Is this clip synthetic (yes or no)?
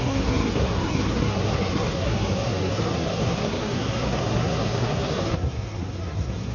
yes